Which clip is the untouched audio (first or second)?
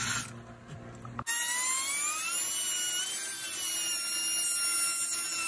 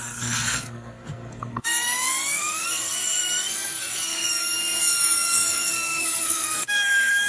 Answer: first